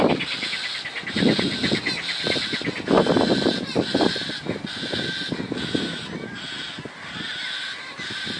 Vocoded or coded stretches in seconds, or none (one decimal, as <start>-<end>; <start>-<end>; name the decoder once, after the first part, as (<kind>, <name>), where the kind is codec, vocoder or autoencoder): none